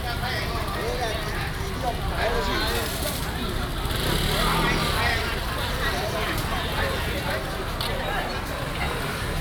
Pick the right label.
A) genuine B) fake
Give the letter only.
A